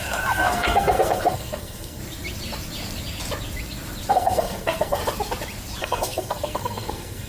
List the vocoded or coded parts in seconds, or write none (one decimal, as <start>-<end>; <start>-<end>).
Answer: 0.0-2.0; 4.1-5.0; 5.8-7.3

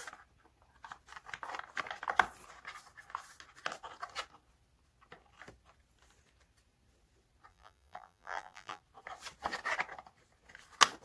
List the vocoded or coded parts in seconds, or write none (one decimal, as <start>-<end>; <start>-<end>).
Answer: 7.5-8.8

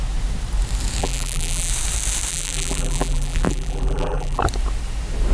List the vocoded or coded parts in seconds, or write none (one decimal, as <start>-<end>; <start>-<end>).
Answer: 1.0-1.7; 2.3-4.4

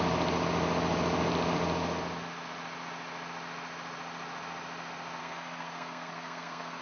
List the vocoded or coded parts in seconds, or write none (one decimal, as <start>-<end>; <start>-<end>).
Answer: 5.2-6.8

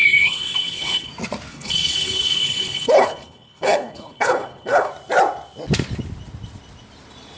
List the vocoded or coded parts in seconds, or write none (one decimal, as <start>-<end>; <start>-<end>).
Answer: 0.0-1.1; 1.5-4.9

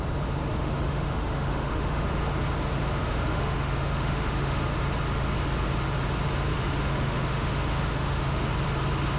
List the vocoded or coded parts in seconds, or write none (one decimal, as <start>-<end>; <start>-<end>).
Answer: 0.5-2.1; 3.0-4.6; 6.5-8.5

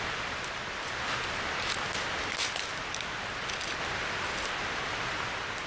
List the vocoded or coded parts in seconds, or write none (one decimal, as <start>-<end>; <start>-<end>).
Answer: none